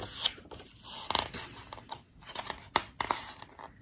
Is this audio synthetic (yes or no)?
no